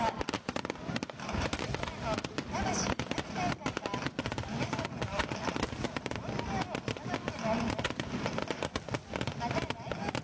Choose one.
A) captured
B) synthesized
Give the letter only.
A